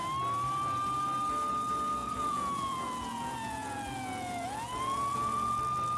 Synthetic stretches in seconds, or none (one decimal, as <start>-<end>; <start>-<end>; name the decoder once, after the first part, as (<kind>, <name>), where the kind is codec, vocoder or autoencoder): 2.0-5.6 (vocoder, Vocos)

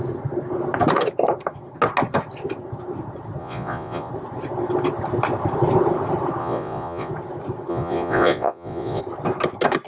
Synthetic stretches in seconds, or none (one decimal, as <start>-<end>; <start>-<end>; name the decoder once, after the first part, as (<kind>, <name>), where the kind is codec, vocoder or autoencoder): 3.4-4.1 (vocoder, Vocos); 6.4-7.1; 7.7-9.0

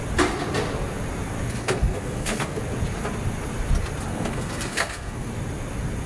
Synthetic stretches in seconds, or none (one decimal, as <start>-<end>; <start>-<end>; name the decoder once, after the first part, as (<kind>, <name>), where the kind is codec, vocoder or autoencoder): 1.6-2.6 (codec, SNAC); 4.1-5.3

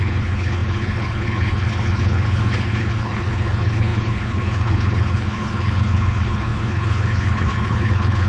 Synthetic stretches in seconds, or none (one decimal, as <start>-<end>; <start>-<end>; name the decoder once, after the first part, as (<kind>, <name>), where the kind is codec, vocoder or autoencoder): 0.0-8.3 (codec, HILCodec)

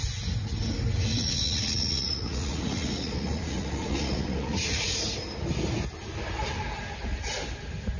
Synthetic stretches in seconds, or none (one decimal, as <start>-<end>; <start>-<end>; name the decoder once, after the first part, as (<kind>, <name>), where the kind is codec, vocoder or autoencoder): 1.1-5.0 (vocoder, Vocos)

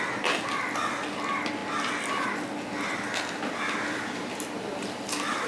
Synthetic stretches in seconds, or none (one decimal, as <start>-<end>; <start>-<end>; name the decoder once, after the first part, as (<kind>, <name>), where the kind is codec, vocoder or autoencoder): none

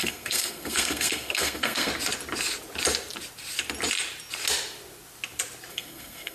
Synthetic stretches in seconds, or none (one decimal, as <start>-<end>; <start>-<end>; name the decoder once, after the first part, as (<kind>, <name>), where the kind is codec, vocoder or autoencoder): 0.0-1.9 (codec, SNAC); 5.7-6.3

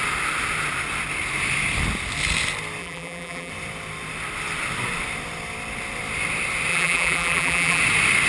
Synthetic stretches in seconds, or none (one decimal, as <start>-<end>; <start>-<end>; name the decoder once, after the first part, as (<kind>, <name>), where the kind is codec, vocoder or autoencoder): 2.8-3.5 (vocoder, BigVGAN v2); 6.7-7.8